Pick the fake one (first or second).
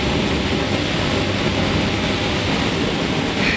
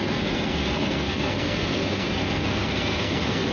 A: second